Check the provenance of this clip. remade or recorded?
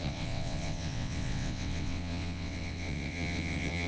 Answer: remade